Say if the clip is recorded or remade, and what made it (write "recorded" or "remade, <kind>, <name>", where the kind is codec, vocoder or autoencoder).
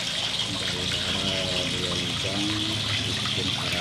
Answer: recorded